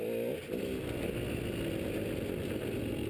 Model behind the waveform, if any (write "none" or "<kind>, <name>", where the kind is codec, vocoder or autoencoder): none